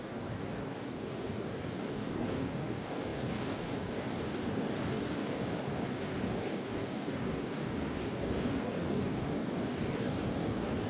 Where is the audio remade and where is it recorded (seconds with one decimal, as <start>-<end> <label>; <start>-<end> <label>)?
0.0-10.9 remade